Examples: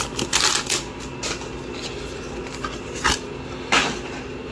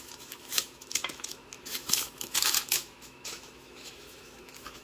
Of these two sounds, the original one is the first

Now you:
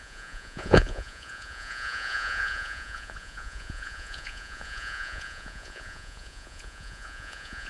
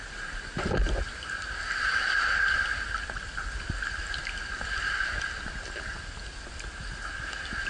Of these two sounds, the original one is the second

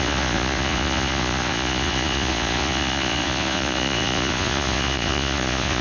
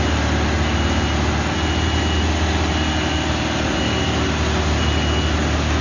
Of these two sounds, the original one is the second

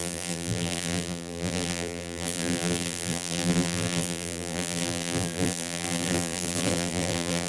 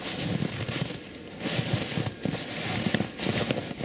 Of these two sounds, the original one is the second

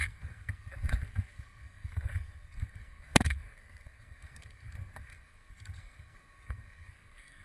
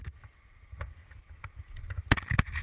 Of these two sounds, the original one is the second